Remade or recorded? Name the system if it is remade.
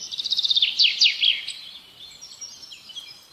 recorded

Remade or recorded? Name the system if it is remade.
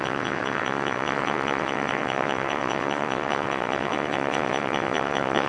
remade, vocoder, WaveNeXt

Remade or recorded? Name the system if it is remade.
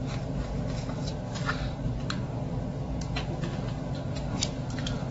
recorded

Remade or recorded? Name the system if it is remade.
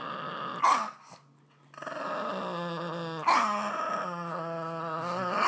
recorded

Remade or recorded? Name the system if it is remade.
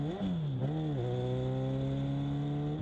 recorded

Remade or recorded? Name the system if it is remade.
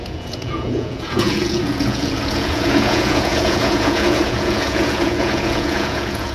remade, vocoder, Vocos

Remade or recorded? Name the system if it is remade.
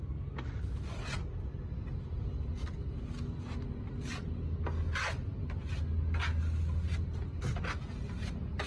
recorded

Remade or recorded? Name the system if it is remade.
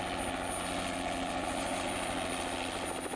recorded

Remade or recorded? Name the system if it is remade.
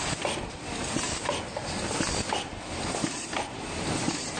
recorded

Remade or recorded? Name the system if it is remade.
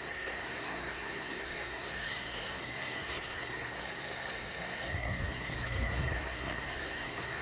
remade, codec, SNAC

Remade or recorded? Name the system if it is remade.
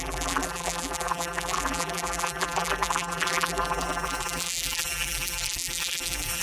remade, vocoder, BigVGAN v2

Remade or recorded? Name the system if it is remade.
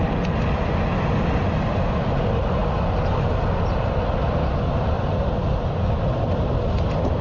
recorded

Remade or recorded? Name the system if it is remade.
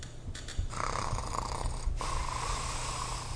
recorded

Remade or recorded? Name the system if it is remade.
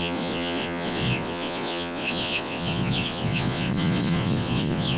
remade, vocoder, Vocos